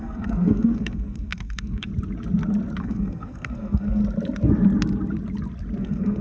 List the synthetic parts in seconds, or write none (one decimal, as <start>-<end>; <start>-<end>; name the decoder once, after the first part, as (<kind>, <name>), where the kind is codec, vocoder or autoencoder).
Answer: 0.0-1.9 (codec, SNAC); 2.8-4.0; 5.8-6.2